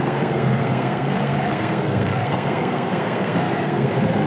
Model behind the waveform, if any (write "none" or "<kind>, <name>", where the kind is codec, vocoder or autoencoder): codec, SNAC